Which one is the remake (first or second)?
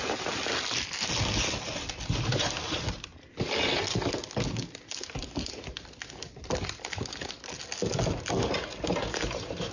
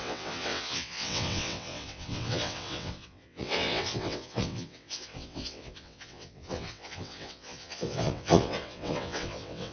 second